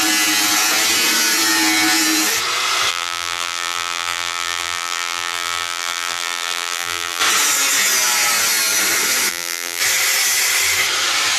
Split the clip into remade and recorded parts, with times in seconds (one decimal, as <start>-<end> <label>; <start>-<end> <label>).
0.0-2.9 recorded; 2.9-7.2 remade; 7.2-9.3 recorded; 9.3-9.8 remade; 9.8-11.4 recorded